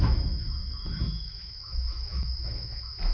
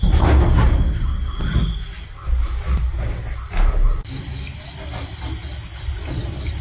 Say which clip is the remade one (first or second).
first